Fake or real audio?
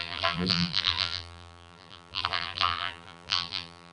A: fake